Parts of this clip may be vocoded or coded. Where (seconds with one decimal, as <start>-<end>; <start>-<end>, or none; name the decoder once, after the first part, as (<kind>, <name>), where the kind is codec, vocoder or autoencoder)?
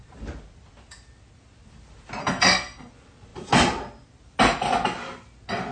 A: 2.2-2.9 (codec, SNAC)